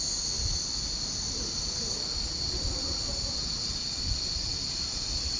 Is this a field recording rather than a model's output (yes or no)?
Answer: yes